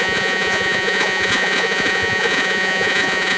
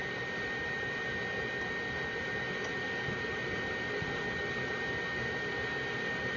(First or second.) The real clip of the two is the second